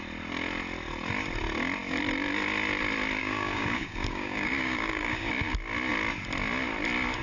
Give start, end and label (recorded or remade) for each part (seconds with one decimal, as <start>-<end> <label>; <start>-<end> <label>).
0.0-3.2 recorded; 3.2-5.3 remade; 5.3-7.2 recorded